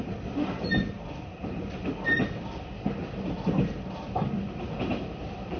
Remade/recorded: recorded